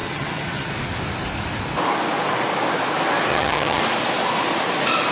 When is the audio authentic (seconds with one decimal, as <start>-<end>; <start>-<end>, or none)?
0.7-3.3; 3.8-5.1